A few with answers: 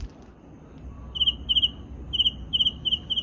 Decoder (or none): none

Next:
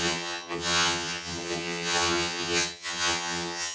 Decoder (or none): vocoder, HiFi-GAN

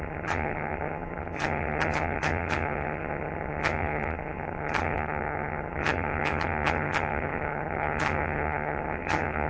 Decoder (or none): vocoder, HiFi-GAN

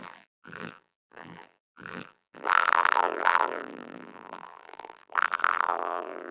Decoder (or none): vocoder, BigVGAN v2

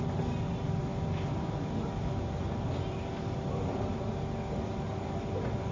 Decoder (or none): none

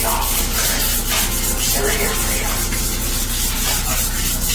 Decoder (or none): none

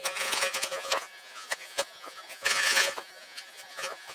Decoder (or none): vocoder, Vocos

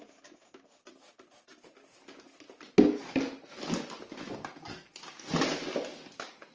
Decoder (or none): none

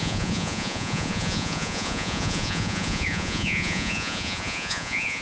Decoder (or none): vocoder, Vocos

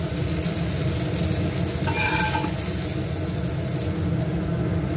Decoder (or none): none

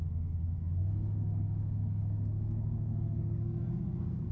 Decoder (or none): codec, SNAC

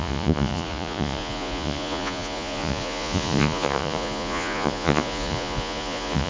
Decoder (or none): vocoder, Vocos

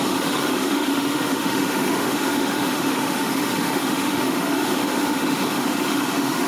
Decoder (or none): autoencoder, DAC-VAE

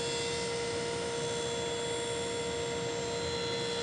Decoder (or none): none